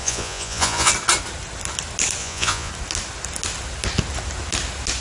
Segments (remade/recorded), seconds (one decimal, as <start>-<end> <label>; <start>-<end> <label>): 0.0-0.9 remade; 0.9-2.2 recorded; 2.2-2.7 remade; 2.7-5.0 recorded